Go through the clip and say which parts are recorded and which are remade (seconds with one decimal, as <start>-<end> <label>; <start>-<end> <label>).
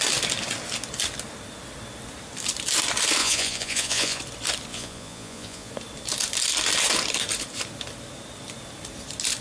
0.0-3.2 recorded; 3.2-4.2 remade; 4.2-4.7 recorded; 4.7-5.7 remade; 5.7-9.4 recorded